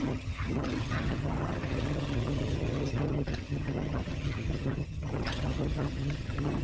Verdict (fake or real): fake